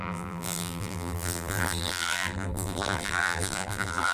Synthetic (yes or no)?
yes